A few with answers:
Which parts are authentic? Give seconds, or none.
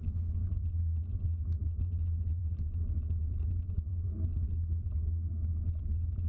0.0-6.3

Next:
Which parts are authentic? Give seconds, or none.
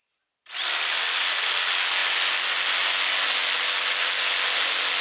0.0-5.0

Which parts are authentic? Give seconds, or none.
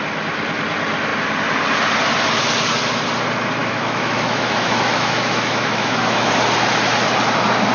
0.0-3.6; 6.3-7.7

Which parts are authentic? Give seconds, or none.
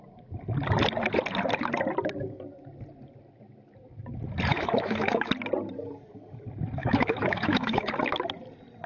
0.0-4.5; 5.3-6.8; 7.9-8.9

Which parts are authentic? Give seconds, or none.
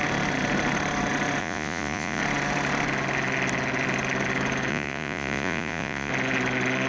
0.0-1.4; 2.2-4.7; 6.1-6.9